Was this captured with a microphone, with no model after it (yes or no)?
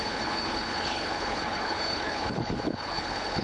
no